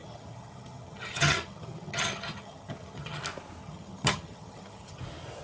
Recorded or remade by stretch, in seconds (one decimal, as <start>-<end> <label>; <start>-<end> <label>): 0.0-3.2 remade; 3.2-3.6 recorded; 3.6-5.0 remade; 5.0-5.4 recorded

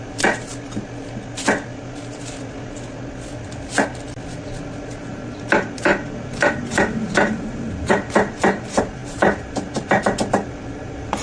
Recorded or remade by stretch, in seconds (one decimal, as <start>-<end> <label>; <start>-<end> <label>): 0.0-0.5 remade; 0.5-5.0 recorded; 5.0-11.2 remade

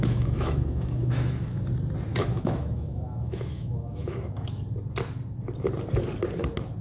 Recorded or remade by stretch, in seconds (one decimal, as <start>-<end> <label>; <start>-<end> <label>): 0.0-1.6 remade; 1.6-2.1 recorded; 2.1-4.6 remade; 4.6-6.8 recorded

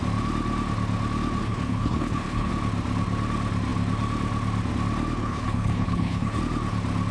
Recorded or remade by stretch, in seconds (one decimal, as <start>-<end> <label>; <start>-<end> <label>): 0.0-1.4 recorded; 1.4-2.5 remade; 2.5-5.2 recorded; 5.2-6.4 remade; 6.4-7.1 recorded

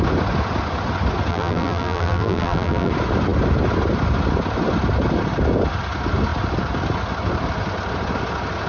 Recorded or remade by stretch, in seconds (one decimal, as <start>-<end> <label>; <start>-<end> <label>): 0.0-1.3 recorded; 1.3-2.9 remade; 2.9-8.7 recorded

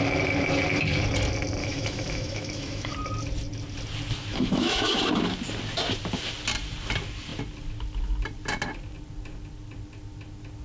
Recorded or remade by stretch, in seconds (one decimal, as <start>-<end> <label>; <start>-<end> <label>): 0.0-1.6 recorded; 1.6-2.9 remade; 2.9-4.3 recorded; 4.3-5.0 remade; 5.0-10.6 recorded

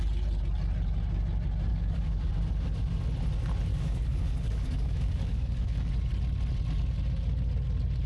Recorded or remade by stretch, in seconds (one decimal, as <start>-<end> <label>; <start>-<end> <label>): 0.0-1.7 recorded; 1.7-2.3 remade; 2.3-3.7 recorded; 3.7-5.9 remade; 5.9-8.1 recorded